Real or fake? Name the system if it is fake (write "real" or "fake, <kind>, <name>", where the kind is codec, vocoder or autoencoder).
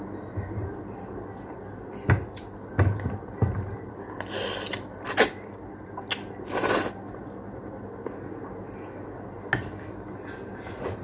real